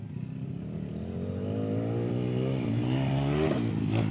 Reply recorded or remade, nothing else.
recorded